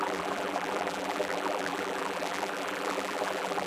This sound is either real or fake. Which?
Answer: fake